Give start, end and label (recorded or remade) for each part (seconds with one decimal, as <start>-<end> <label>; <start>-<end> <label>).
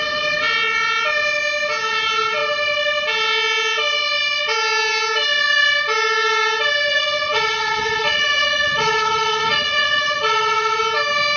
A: 0.0-6.9 recorded; 6.9-10.8 remade; 10.8-11.4 recorded